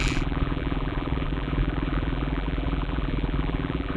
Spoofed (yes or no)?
yes